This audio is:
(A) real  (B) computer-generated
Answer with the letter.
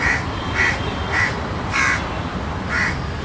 A